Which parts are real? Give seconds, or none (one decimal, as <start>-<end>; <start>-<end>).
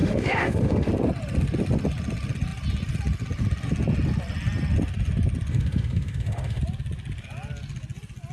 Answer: 0.9-5.5; 6.6-8.3